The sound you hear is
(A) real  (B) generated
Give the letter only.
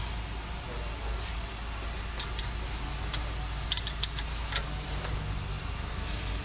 A